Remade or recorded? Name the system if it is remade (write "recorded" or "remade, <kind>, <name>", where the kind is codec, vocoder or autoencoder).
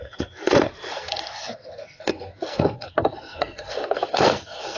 remade, codec, SNAC